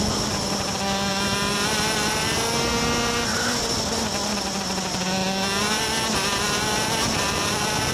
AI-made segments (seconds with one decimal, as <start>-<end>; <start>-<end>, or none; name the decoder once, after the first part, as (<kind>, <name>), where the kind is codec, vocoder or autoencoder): none